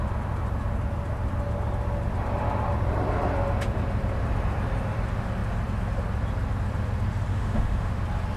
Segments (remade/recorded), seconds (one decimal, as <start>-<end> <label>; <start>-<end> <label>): 0.0-7.3 recorded; 7.3-8.0 remade; 8.0-8.4 recorded